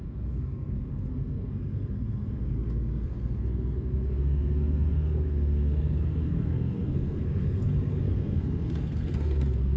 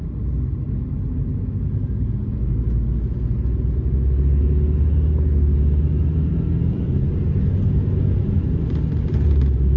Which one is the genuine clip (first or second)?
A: second